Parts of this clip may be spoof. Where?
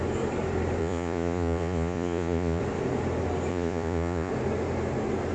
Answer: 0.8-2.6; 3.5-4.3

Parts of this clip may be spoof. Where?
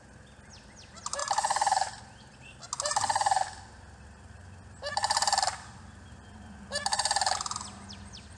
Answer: none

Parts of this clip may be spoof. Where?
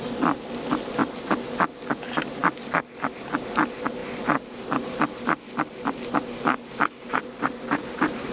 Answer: none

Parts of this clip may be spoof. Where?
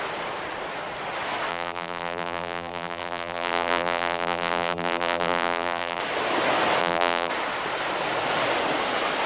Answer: 1.5-6.0; 6.8-7.3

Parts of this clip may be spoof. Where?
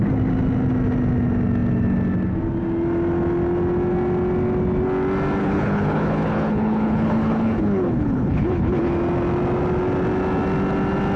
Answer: 5.4-8.9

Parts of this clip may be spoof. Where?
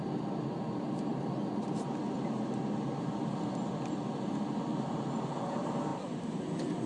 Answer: none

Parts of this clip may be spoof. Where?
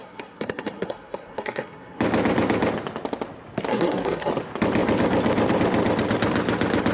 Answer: 0.0-2.0; 3.7-4.3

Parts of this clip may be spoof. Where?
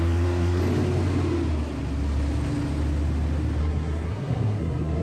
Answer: 0.0-0.6; 3.6-5.0